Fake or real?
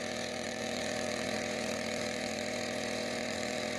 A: fake